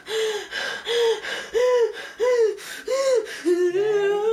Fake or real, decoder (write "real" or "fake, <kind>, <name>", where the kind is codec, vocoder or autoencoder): real